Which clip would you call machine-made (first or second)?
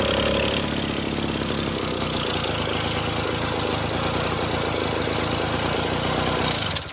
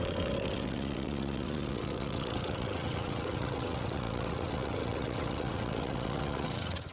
second